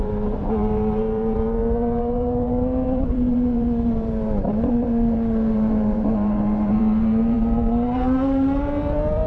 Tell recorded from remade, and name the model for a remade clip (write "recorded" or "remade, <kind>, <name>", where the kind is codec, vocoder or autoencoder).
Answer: remade, vocoder, BigVGAN v2